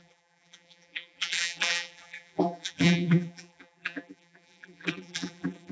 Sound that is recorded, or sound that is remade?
remade